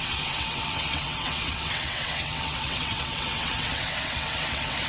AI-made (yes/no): yes